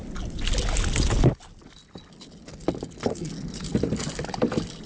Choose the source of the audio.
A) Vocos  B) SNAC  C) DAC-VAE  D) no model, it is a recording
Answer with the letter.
D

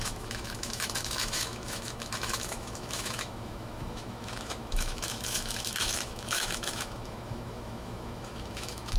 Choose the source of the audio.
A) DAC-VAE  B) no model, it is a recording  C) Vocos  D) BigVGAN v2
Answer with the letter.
A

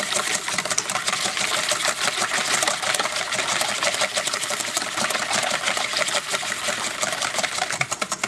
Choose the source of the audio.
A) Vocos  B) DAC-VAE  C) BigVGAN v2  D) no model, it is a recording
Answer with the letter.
D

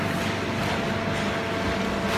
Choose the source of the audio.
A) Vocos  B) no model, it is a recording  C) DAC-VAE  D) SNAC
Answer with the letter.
B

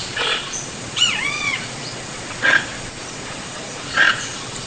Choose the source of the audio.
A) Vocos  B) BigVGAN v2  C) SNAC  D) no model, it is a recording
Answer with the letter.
A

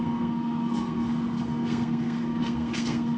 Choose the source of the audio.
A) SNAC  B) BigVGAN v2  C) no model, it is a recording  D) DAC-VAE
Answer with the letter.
A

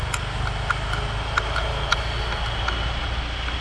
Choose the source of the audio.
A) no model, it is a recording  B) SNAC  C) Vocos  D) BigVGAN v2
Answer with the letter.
A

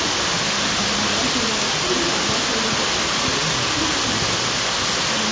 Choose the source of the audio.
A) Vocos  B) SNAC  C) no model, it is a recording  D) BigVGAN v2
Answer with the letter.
C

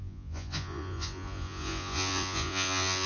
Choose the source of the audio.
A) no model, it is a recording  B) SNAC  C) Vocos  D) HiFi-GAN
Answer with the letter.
C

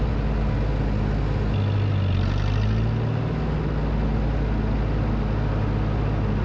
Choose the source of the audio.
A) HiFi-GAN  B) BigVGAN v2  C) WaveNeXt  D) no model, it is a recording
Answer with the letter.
D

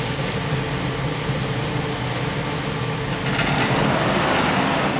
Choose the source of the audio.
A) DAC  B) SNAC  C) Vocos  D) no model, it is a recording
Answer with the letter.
D